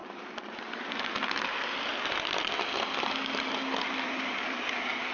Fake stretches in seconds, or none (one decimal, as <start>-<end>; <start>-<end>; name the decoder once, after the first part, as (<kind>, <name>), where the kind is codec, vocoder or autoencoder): 0.0-1.9 (vocoder, BigVGAN v2); 3.9-5.1